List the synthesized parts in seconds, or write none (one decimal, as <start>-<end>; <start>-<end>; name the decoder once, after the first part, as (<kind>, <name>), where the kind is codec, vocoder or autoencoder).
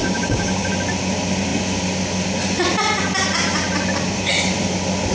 0.0-0.7 (codec, DAC)